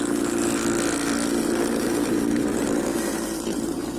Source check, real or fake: real